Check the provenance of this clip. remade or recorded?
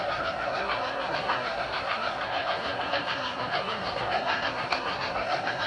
remade